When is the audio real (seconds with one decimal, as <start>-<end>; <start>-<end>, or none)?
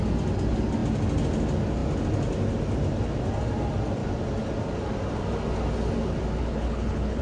0.0-6.4